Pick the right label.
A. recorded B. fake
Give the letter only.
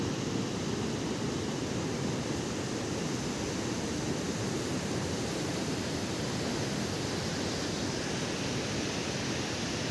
A